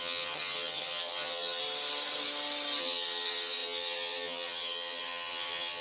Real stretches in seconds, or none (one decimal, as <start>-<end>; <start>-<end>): 1.6-2.8